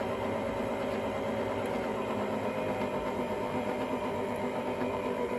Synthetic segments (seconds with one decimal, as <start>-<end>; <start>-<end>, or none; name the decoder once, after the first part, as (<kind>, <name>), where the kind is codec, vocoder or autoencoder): 0.0-5.4 (vocoder, BigVGAN v2)